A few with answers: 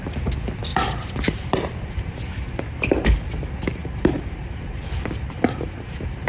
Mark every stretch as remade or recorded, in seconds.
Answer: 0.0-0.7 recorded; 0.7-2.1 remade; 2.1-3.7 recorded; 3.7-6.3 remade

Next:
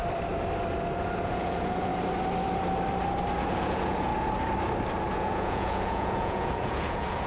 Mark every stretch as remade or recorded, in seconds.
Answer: 0.0-1.2 recorded; 1.2-1.9 remade; 1.9-3.4 recorded; 3.4-4.1 remade; 4.1-5.1 recorded; 5.1-7.3 remade

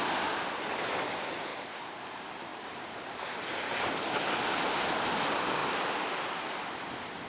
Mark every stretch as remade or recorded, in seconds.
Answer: 0.0-1.5 recorded; 1.5-2.1 remade; 2.1-2.5 recorded; 2.5-3.9 remade; 3.9-7.3 recorded

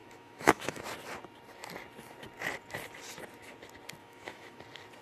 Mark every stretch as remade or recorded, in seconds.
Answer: 0.0-0.8 remade; 0.8-4.0 recorded; 4.0-4.6 remade; 4.6-5.0 recorded

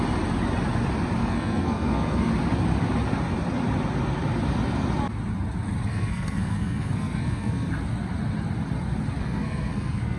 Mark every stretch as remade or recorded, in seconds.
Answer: 0.0-1.2 recorded; 1.2-2.3 remade; 2.3-5.9 recorded; 5.9-7.7 remade; 7.7-9.2 recorded; 9.2-10.2 remade